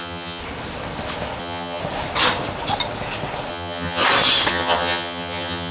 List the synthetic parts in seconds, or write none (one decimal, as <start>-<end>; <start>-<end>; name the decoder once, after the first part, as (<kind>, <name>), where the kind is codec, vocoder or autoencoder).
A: 0.0-0.4 (vocoder, HiFi-GAN); 1.4-1.8; 3.5-4.0; 4.5-5.7